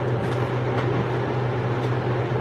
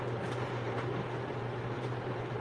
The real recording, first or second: first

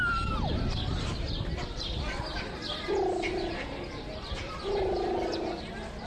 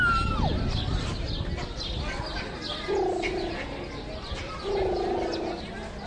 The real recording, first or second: second